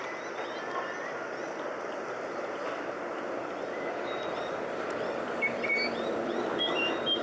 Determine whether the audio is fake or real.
fake